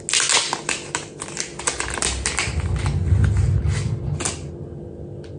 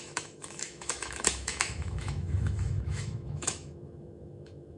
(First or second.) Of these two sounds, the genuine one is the first